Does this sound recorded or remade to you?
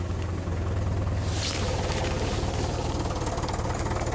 recorded